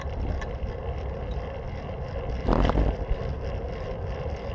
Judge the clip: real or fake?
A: fake